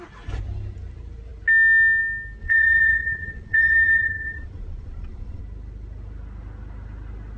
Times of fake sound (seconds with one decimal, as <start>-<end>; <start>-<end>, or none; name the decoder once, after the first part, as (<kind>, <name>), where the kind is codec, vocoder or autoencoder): 2.4-5.4 (vocoder, Vocos)